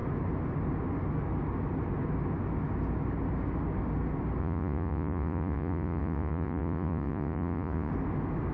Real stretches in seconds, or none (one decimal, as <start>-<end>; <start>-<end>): 0.0-4.4; 7.9-8.5